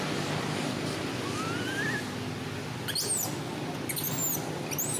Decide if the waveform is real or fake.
real